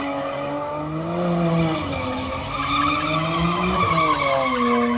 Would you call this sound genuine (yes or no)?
yes